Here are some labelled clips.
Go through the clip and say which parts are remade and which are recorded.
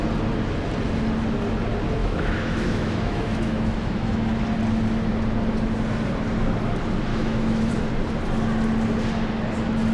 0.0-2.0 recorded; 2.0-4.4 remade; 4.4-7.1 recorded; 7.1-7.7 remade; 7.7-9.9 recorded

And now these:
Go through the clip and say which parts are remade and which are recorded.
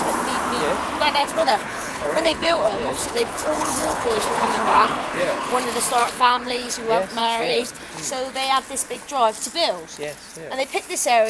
0.0-1.2 recorded; 1.2-5.5 remade; 5.5-6.0 recorded; 6.0-6.7 remade; 6.7-7.2 recorded; 7.2-7.8 remade; 7.8-11.3 recorded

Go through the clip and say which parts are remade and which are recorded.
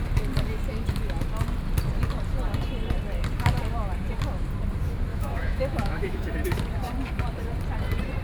0.0-5.1 recorded; 5.1-6.3 remade; 6.3-8.2 recorded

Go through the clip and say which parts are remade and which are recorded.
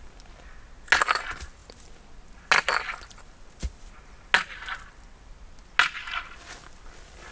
0.0-7.3 recorded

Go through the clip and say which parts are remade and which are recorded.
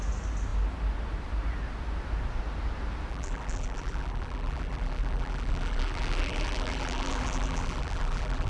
0.0-3.1 recorded; 3.1-8.5 remade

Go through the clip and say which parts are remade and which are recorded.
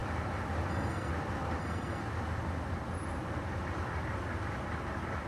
0.0-0.7 recorded; 0.7-1.1 remade; 1.1-1.6 recorded; 1.6-2.0 remade; 2.0-5.3 recorded